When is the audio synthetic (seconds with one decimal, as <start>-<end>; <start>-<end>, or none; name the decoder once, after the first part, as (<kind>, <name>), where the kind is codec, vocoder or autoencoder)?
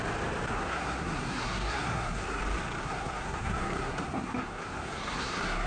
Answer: 0.5-2.4 (codec, SNAC); 2.8-5.7